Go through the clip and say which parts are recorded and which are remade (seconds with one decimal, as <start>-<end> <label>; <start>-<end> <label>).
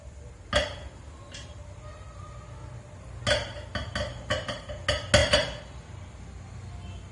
0.0-7.1 recorded